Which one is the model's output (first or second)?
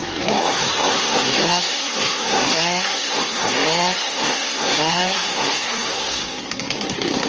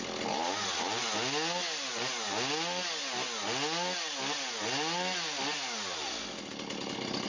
first